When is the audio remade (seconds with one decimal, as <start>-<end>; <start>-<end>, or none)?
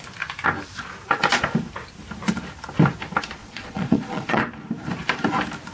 3.4-4.4